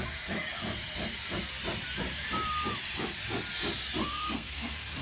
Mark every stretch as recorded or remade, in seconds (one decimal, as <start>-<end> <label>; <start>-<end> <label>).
0.0-4.0 recorded; 4.0-5.0 remade

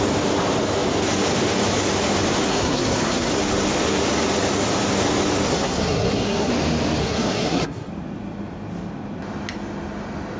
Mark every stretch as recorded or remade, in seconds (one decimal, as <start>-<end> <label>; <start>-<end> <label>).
0.0-2.5 recorded; 2.5-3.3 remade; 3.3-5.5 recorded; 5.5-6.5 remade; 6.5-7.0 recorded; 7.0-7.9 remade; 7.9-10.4 recorded